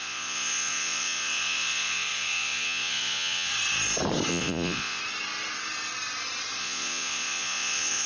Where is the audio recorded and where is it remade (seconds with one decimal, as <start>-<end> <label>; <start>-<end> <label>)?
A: 0.0-3.5 remade; 3.5-4.3 recorded; 4.3-5.0 remade; 5.0-6.6 recorded; 6.6-8.1 remade